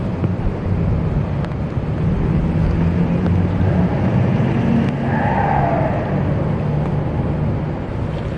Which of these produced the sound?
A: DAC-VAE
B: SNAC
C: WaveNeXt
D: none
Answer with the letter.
D